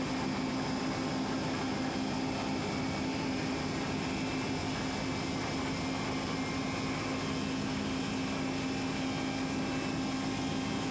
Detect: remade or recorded recorded